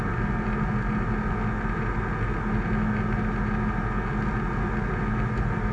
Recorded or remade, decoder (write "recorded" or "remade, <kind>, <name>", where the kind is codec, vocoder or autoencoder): recorded